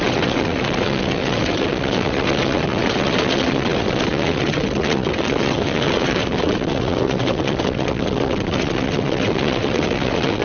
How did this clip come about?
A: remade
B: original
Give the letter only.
A